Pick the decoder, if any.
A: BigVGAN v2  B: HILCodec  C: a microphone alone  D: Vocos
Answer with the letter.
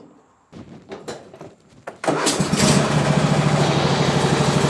C